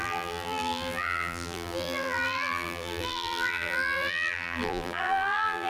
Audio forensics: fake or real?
fake